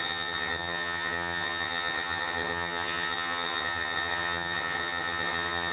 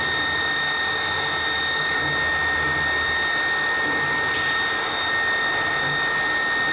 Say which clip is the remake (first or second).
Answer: first